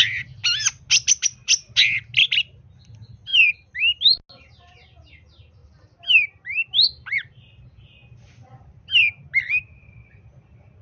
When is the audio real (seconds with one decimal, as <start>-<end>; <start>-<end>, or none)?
0.0-10.8